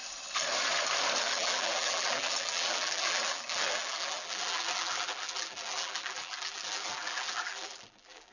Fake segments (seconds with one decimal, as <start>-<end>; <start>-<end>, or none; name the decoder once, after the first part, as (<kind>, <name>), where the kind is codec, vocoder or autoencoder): 1.2-8.3 (vocoder, BigVGAN v2)